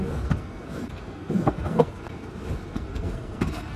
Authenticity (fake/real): fake